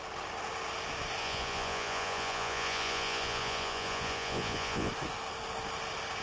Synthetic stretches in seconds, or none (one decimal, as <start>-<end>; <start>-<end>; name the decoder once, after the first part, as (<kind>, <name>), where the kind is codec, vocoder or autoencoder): 1.2-4.9 (vocoder, Vocos)